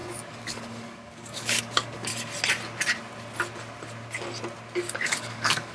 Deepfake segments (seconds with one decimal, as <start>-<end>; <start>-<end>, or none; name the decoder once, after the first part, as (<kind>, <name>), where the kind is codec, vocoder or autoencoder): 0.0-2.1 (codec, DAC); 5.0-5.7